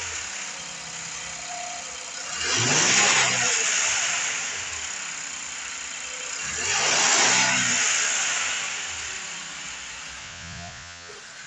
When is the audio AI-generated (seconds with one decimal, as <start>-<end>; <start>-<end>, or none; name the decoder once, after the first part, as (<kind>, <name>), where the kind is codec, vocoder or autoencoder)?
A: 10.2-11.1 (vocoder, Vocos)